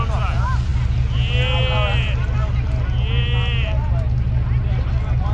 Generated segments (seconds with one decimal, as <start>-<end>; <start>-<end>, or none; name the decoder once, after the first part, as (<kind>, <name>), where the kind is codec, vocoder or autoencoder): none